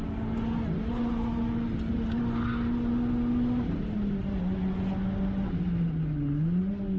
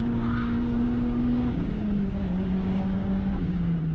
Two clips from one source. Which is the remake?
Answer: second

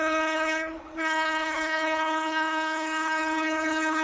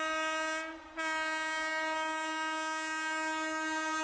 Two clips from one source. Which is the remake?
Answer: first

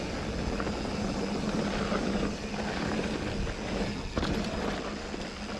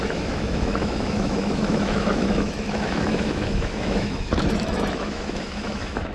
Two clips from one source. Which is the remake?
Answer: second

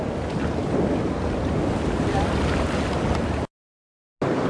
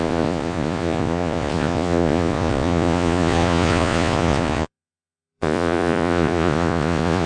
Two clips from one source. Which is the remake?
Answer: second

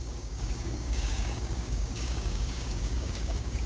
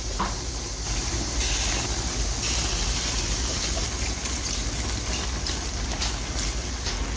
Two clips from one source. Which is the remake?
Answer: first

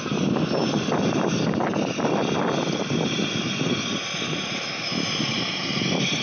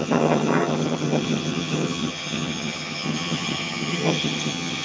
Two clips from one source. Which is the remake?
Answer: second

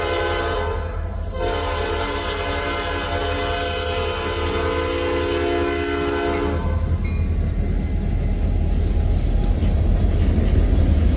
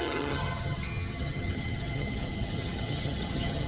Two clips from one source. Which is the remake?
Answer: second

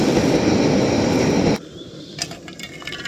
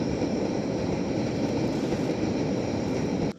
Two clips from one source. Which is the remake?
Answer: second